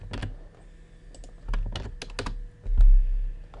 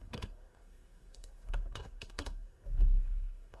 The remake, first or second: second